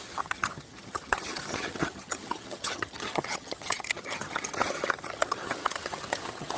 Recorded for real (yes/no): no